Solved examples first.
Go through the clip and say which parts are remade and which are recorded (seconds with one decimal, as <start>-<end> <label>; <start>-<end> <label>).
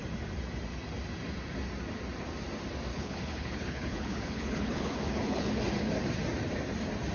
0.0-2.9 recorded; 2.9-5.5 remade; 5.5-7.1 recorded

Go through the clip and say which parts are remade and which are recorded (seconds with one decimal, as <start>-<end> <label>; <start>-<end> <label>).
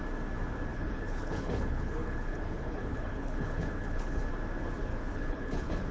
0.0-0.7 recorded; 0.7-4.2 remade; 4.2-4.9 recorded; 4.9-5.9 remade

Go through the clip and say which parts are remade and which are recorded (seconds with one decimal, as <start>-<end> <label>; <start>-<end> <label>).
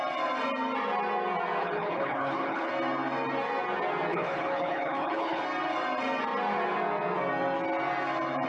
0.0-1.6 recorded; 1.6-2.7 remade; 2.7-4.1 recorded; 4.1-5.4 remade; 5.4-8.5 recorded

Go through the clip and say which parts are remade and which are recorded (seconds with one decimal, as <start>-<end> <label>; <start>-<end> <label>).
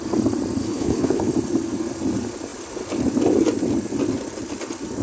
0.0-0.6 recorded; 0.6-1.3 remade; 1.3-5.0 recorded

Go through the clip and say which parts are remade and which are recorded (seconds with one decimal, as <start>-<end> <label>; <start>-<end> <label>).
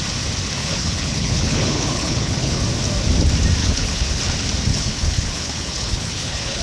0.0-0.6 recorded; 0.6-2.6 remade; 2.6-3.6 recorded; 3.6-4.2 remade; 4.2-4.7 recorded; 4.7-6.6 remade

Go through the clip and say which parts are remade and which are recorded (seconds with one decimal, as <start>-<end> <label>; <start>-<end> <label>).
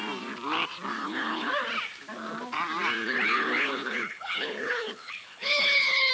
0.0-1.0 recorded; 1.0-1.5 remade; 1.5-3.0 recorded; 3.0-6.1 remade